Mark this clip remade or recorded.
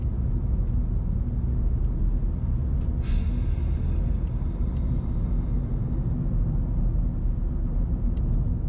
recorded